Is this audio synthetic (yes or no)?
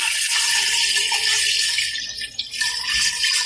no